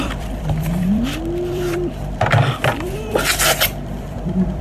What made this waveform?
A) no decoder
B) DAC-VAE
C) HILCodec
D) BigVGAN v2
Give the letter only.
D